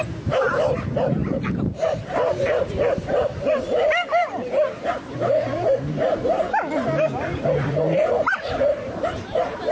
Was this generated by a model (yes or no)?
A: yes